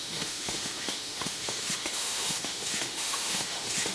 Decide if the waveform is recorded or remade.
remade